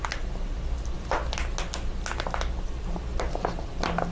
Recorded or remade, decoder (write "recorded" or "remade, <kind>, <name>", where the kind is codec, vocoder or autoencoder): recorded